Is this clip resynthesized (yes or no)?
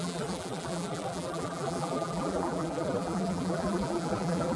yes